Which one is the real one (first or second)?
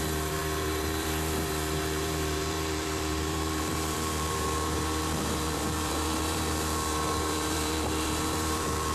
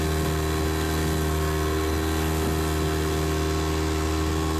second